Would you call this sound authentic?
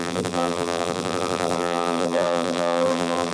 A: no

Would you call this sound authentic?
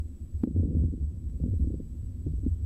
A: no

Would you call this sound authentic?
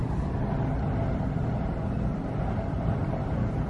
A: yes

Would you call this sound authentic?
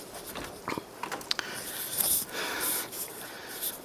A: yes